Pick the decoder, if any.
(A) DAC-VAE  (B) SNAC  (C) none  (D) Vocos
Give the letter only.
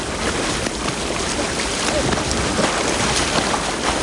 C